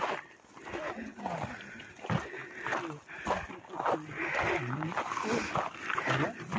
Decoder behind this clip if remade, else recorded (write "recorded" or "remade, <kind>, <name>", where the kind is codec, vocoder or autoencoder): recorded